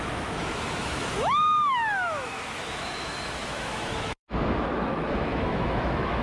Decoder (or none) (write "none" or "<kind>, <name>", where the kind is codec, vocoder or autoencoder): autoencoder, DAC-VAE